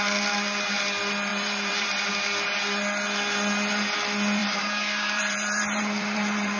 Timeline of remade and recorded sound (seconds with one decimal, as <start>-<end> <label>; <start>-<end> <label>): 0.0-1.3 recorded; 1.3-2.1 remade; 2.1-4.4 recorded; 4.4-6.6 remade